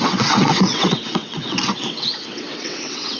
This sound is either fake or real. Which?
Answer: fake